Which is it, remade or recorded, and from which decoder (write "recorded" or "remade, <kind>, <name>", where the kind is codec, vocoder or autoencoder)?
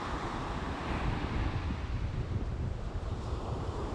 remade, vocoder, BigVGAN v2